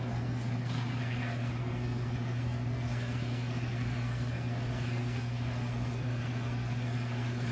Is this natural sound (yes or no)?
no